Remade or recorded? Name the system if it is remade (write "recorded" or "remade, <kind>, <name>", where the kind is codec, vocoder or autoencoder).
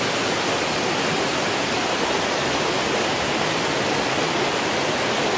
recorded